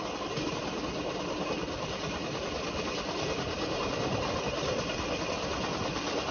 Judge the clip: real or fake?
real